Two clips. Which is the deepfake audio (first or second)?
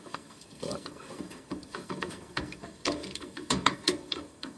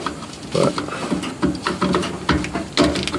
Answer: first